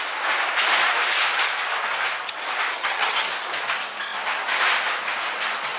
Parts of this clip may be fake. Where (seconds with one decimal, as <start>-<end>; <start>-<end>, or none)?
2.7-3.3